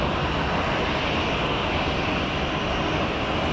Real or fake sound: real